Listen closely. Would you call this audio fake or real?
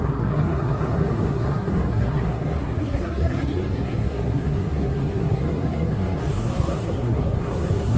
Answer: fake